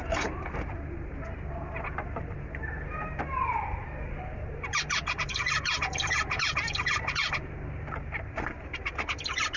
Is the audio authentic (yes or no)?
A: no